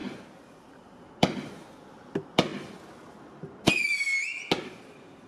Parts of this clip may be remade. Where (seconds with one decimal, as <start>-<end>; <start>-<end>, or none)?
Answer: 0.0-1.0